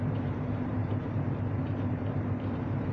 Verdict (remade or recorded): remade